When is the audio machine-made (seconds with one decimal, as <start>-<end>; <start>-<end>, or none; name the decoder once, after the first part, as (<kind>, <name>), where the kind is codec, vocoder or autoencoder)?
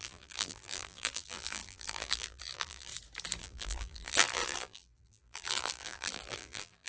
0.0-2.9 (vocoder, BigVGAN v2); 3.4-6.9